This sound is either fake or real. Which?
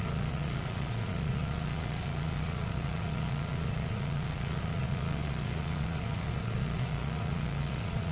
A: fake